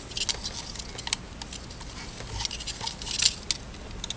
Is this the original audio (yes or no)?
yes